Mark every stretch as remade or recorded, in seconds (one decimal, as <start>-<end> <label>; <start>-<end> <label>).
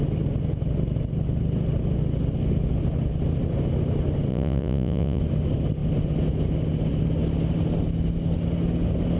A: 0.0-4.3 recorded; 4.3-5.2 remade; 5.2-9.2 recorded